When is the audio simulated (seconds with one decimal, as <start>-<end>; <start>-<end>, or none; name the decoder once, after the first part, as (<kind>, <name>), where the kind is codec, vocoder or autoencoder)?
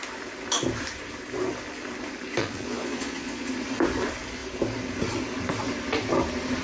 2.4-3.5 (vocoder, Vocos)